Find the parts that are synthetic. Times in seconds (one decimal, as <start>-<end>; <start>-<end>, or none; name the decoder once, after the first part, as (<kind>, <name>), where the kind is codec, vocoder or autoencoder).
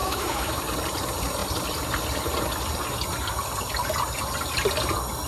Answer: 0.0-0.6 (autoencoder, DAC-VAE)